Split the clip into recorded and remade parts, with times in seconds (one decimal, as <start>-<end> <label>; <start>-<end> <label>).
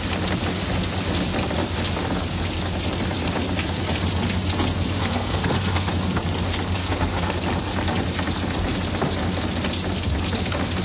0.0-5.0 recorded; 5.0-5.9 remade; 5.9-6.8 recorded; 6.8-7.4 remade; 7.4-10.8 recorded